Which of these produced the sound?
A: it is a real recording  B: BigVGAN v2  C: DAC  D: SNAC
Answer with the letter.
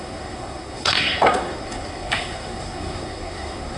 D